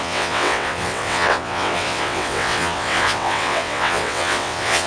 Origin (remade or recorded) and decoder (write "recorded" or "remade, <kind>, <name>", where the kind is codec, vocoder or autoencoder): remade, vocoder, WaveNeXt